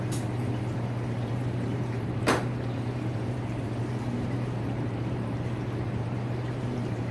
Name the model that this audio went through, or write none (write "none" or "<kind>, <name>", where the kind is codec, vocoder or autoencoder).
vocoder, BigVGAN v2